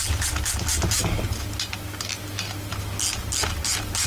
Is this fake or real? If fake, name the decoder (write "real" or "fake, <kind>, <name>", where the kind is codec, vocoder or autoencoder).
real